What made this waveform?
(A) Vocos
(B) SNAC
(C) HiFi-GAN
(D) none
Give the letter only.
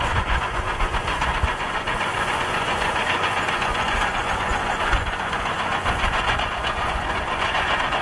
A